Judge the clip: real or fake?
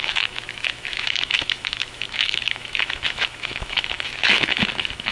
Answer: fake